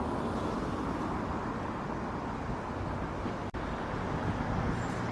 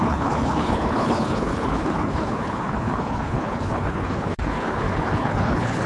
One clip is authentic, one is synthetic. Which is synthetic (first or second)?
second